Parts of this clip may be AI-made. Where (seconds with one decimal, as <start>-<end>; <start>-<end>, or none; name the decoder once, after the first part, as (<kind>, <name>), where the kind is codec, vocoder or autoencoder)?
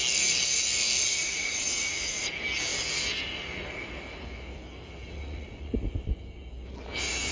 1.1-2.3 (vocoder, Vocos); 5.1-5.7